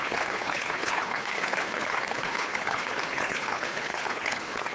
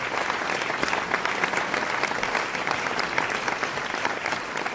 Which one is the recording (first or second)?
second